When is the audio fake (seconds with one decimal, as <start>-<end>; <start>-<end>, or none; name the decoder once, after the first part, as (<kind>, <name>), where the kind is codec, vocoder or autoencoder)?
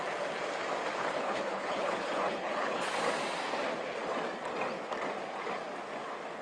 1.0-2.9 (codec, HILCodec)